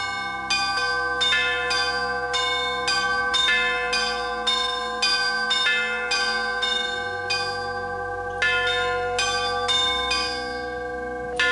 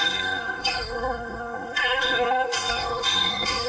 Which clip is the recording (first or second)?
first